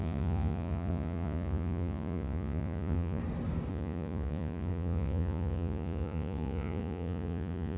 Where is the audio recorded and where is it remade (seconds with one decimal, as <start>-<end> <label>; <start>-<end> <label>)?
0.0-3.2 remade; 3.2-3.7 recorded; 3.7-7.8 remade